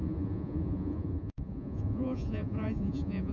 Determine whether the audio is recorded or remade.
remade